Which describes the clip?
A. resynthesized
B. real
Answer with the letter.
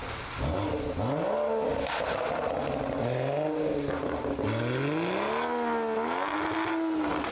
B